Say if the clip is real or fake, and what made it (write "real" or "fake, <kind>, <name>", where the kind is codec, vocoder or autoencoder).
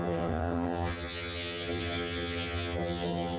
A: fake, vocoder, HiFi-GAN